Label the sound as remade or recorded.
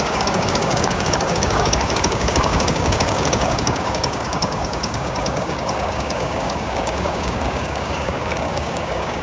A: remade